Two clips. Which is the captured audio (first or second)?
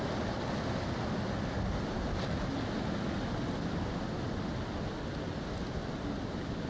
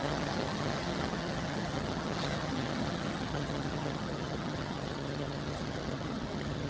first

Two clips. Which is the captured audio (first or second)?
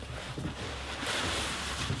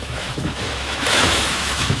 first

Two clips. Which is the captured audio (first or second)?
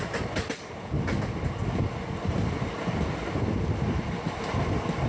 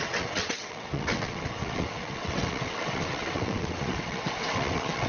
first